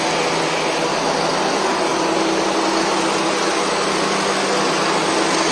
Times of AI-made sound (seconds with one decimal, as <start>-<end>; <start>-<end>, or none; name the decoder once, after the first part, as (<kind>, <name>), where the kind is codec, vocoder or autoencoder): none